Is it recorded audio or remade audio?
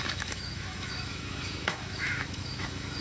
remade